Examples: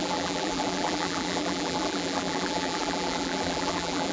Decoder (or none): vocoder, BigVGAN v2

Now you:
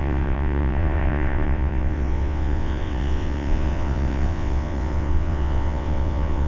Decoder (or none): vocoder, WaveNeXt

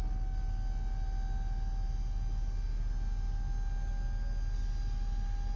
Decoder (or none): none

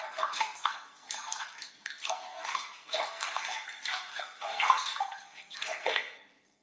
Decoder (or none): codec, SNAC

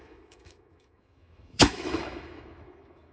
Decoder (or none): autoencoder, DAC-VAE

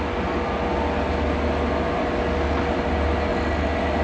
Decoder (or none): none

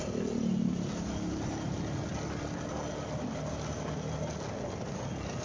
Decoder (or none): none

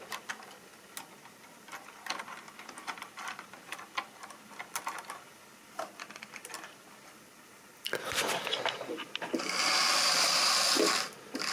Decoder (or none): vocoder, BigVGAN v2